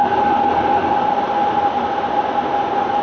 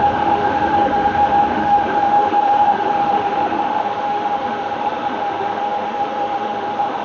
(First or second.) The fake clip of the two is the second